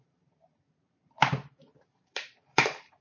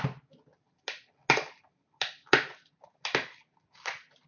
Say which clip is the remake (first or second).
first